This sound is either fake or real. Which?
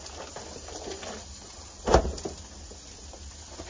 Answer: real